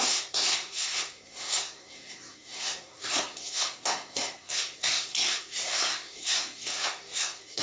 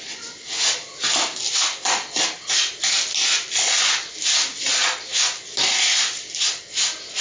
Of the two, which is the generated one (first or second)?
first